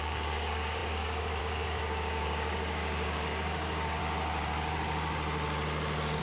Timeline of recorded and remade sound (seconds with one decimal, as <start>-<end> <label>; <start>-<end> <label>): 0.0-4.0 remade; 4.0-6.2 recorded